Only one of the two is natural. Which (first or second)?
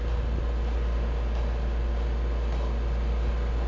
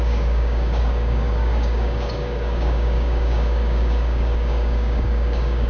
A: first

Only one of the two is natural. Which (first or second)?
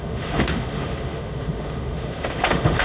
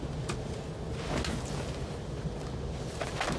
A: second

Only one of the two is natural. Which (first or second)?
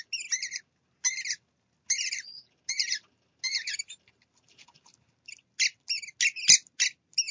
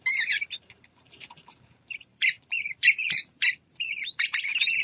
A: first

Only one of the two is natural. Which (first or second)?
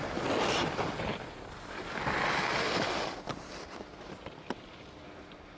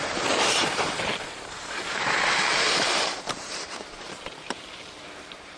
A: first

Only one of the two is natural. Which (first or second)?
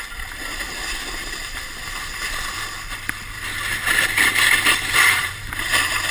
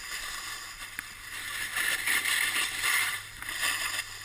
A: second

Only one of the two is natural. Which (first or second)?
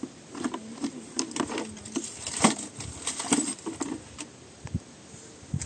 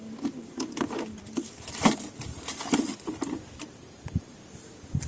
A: first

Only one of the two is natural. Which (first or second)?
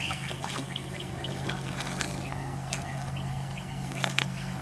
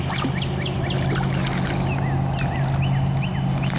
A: second